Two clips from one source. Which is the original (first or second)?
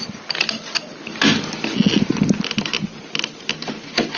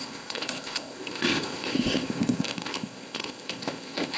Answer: first